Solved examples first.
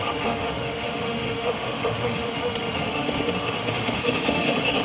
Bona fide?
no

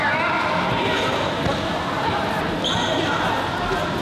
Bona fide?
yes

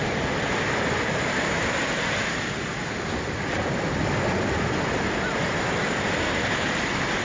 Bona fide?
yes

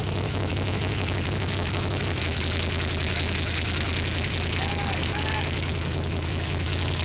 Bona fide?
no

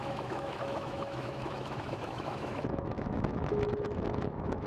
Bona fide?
no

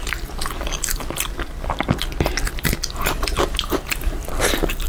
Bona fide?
yes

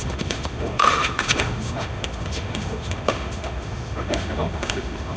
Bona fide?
no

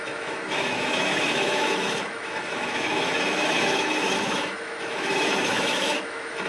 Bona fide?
no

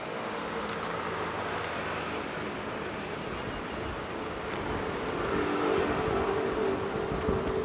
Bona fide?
yes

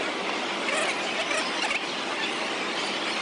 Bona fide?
yes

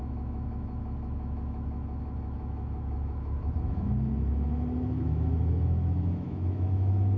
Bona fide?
no